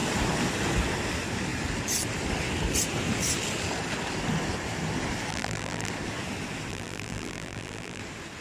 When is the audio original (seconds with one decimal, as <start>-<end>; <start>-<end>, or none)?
0.0-5.3; 5.9-6.7; 8.0-8.4